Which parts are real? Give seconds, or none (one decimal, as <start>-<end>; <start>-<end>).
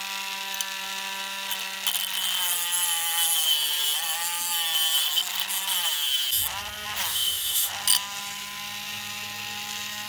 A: 0.0-7.1; 7.7-10.1